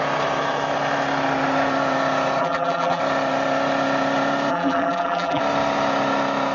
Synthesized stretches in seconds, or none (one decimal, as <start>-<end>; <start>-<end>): 2.4-3.0; 4.5-5.4